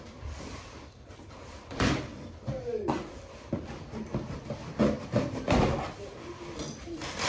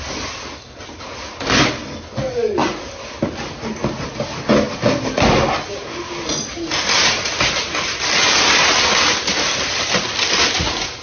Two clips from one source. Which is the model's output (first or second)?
first